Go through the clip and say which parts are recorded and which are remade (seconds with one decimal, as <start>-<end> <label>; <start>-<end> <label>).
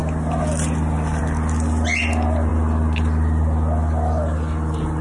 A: 0.0-5.0 recorded